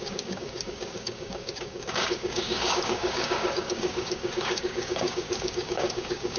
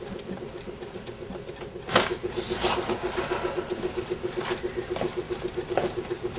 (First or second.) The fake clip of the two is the first